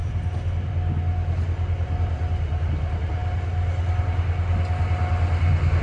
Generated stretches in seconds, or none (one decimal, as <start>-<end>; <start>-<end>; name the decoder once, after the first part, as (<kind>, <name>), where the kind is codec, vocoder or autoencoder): none